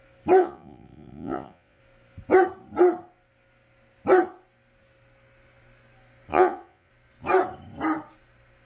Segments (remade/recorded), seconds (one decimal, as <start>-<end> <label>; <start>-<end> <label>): 0.0-0.4 recorded; 0.4-1.8 remade; 1.8-6.3 recorded; 6.3-6.9 remade; 6.9-8.7 recorded